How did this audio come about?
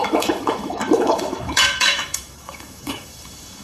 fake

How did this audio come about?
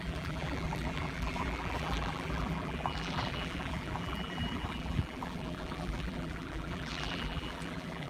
fake